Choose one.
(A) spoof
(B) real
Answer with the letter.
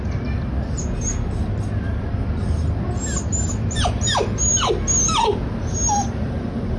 B